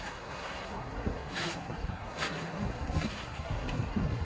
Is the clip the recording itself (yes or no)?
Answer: no